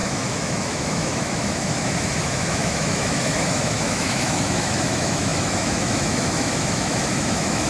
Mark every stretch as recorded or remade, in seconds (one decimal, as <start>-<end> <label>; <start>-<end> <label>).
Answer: 0.0-7.7 remade